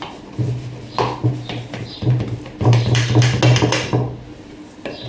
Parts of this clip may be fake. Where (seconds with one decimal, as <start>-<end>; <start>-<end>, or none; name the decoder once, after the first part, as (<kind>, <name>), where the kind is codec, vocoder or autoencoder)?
1.2-3.4 (vocoder, BigVGAN v2)